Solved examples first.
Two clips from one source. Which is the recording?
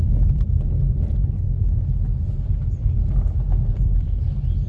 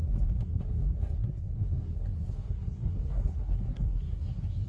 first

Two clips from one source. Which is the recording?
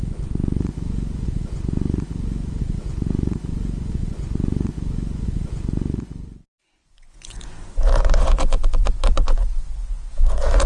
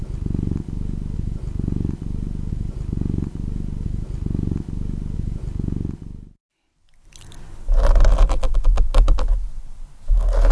second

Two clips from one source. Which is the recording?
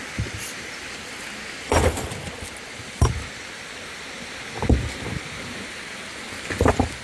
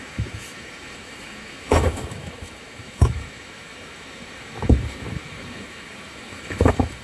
first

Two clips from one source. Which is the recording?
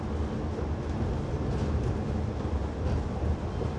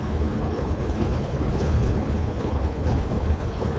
first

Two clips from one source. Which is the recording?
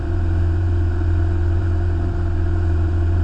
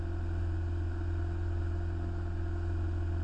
second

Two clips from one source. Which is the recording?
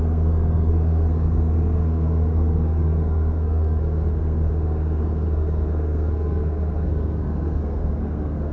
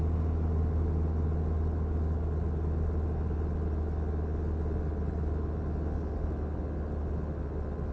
second